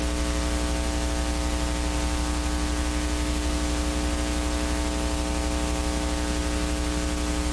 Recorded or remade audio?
recorded